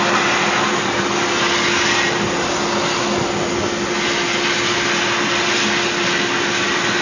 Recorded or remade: recorded